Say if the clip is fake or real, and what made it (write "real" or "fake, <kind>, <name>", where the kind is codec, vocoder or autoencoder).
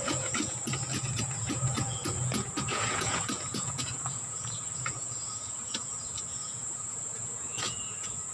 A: fake, vocoder, Vocos